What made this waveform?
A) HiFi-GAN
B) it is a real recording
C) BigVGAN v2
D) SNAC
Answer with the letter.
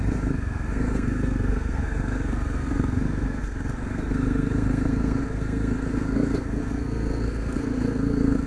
D